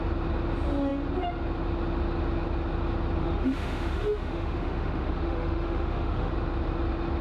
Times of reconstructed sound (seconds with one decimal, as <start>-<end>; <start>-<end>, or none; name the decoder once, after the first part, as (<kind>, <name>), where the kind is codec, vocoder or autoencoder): 3.2-6.3 (autoencoder, DAC-VAE)